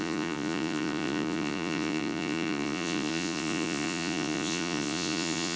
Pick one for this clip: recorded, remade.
remade